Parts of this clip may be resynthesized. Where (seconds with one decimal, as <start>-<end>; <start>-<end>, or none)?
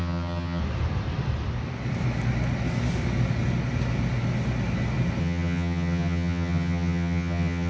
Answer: 0.0-0.6; 5.2-7.7